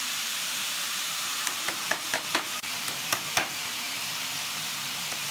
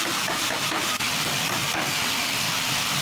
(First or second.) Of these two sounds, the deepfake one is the first